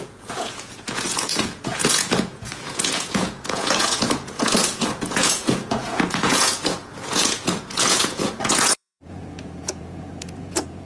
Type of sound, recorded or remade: remade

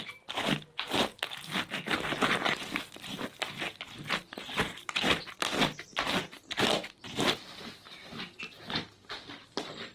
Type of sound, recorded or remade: recorded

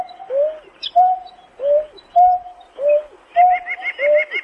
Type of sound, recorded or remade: recorded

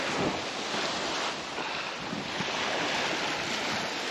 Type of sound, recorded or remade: recorded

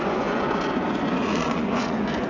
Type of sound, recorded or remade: remade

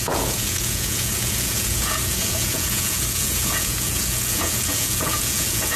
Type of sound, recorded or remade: remade